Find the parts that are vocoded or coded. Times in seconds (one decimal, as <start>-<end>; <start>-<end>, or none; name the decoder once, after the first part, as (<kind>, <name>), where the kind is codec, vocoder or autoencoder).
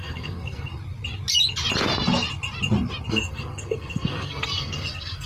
0.0-0.7 (codec, SNAC); 3.1-5.3